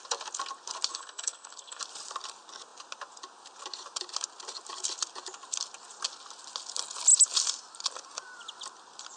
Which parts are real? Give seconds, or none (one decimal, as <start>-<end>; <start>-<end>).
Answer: 0.0-0.9; 1.8-9.2